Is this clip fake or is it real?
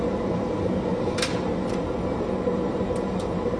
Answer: fake